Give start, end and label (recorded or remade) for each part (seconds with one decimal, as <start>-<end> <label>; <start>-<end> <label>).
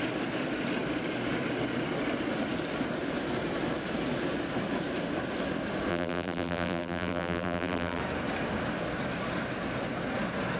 0.0-5.9 recorded; 5.9-8.0 remade; 8.0-10.6 recorded